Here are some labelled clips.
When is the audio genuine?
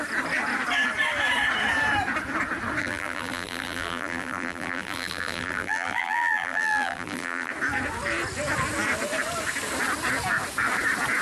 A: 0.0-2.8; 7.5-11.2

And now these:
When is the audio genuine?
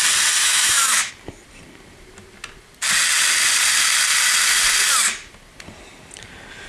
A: 0.0-0.4; 1.1-6.7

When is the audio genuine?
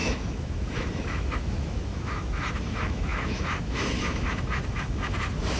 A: none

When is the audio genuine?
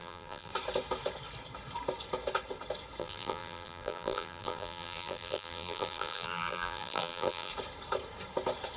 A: 0.5-3.0; 7.5-8.8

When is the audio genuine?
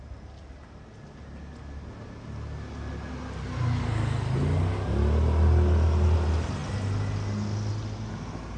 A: 0.0-8.6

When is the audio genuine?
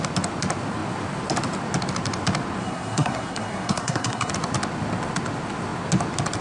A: 0.0-2.6; 4.3-6.4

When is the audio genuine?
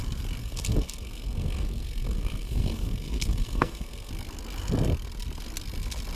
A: 0.0-0.4; 4.1-6.2